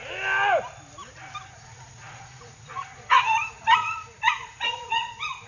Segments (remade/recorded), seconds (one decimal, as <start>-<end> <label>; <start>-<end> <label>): 0.0-1.5 recorded; 1.5-5.5 remade